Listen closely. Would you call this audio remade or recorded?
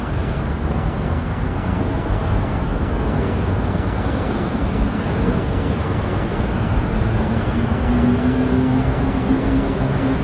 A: remade